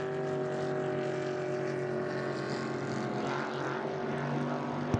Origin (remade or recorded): recorded